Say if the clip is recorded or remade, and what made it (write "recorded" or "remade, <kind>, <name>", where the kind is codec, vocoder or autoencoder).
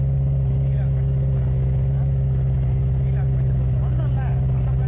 remade, vocoder, BigVGAN v2